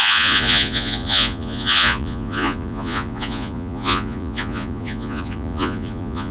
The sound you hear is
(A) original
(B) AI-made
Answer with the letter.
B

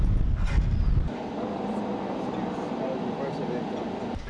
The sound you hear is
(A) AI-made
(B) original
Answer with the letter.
B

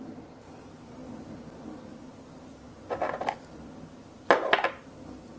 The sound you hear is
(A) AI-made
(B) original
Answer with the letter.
B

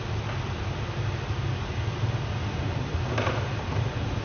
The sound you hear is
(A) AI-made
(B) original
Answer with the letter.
B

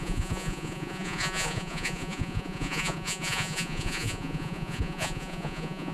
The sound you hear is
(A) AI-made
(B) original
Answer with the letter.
A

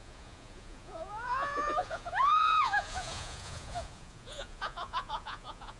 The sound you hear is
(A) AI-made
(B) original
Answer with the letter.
A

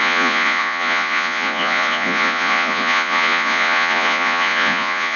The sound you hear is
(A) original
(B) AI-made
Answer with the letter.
B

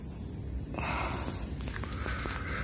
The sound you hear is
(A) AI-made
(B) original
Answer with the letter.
B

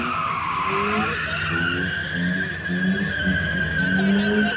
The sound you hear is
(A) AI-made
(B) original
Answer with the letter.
B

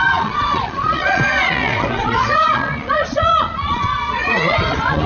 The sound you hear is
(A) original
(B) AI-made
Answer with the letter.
B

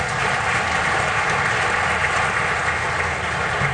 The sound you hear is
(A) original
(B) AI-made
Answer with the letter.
A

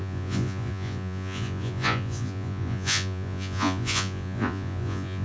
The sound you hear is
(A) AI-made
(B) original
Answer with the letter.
A